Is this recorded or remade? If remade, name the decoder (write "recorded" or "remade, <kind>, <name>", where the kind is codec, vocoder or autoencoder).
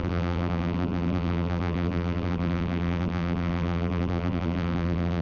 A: remade, vocoder, BigVGAN v2